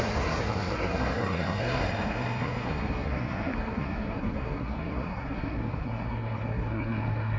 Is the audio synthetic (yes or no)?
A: yes